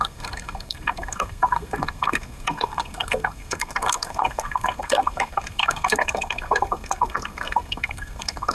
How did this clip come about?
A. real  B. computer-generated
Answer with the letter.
B